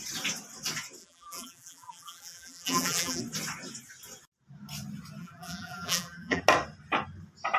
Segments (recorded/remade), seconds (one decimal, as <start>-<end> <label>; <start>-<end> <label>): 0.0-1.0 recorded; 1.0-3.2 remade; 3.2-5.2 recorded; 5.2-6.4 remade; 6.4-7.6 recorded

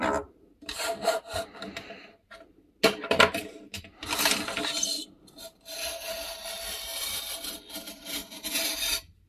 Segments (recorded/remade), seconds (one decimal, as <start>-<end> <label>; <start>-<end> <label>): 0.0-9.3 recorded

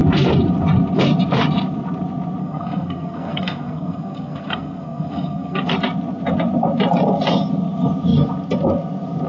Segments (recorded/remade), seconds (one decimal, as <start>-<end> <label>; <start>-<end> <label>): 0.0-2.4 recorded; 2.4-5.7 remade; 5.7-9.3 recorded

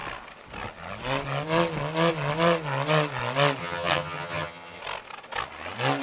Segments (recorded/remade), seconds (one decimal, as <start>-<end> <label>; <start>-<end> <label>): 0.0-3.6 recorded; 3.6-4.8 remade; 4.8-6.0 recorded

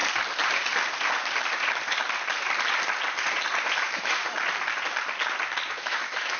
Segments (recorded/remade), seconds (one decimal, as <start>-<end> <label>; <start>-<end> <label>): 0.0-3.8 recorded; 3.8-4.2 remade; 4.2-5.7 recorded; 5.7-6.4 remade

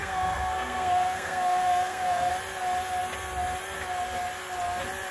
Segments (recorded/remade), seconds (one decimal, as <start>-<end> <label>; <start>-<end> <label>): 0.0-2.3 remade; 2.3-5.1 recorded